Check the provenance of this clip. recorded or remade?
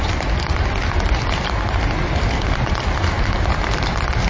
recorded